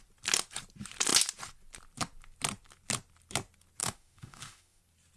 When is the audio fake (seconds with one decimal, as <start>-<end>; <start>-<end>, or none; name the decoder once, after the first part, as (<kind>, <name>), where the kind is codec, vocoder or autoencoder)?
3.8-4.8 (autoencoder, DAC-VAE)